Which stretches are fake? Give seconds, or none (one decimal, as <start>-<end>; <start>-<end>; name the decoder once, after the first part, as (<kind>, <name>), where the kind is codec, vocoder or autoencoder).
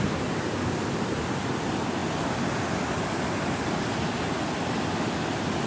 none